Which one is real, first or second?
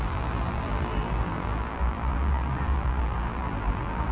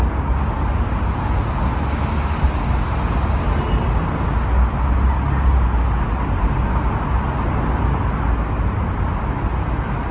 second